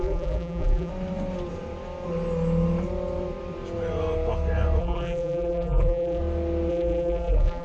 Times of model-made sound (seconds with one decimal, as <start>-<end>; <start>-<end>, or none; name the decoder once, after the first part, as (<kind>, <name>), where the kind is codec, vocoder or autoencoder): 0.0-0.9 (vocoder, BigVGAN v2); 4.8-6.2; 6.7-7.6